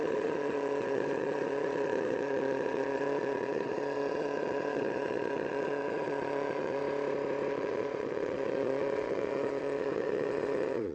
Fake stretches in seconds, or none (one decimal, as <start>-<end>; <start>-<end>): 0.0-6.8; 7.5-10.9